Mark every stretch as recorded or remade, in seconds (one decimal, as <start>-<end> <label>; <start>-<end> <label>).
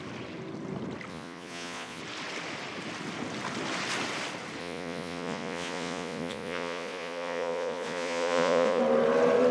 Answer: 0.0-1.1 recorded; 1.1-2.0 remade; 2.0-4.6 recorded; 4.6-8.8 remade; 8.8-9.5 recorded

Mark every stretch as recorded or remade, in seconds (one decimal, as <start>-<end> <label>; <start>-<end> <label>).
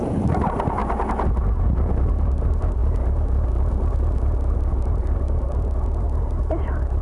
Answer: 0.0-0.8 remade; 0.8-1.6 recorded; 1.6-2.8 remade; 2.8-4.5 recorded; 4.5-7.0 remade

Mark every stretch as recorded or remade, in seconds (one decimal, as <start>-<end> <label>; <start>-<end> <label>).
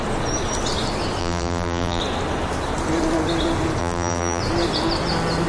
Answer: 0.0-1.2 recorded; 1.2-2.0 remade; 2.0-3.8 recorded; 3.8-4.4 remade; 4.4-5.5 recorded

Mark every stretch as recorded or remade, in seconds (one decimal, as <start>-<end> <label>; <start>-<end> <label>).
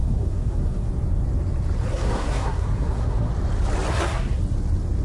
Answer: 0.0-0.9 remade; 0.9-1.9 recorded; 1.9-3.3 remade; 3.3-3.9 recorded; 3.9-4.4 remade; 4.4-5.0 recorded